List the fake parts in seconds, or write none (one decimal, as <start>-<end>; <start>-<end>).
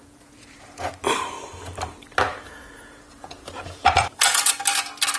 0.0-0.9; 2.3-4.5